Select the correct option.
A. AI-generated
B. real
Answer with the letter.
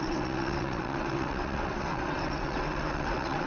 A